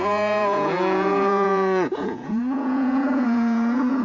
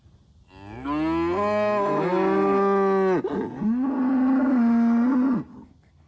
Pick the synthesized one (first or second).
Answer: first